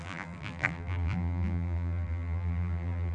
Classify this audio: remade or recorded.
remade